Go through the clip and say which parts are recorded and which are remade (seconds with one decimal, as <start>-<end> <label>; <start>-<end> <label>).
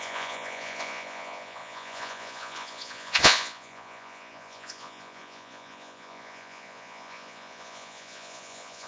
0.0-8.9 remade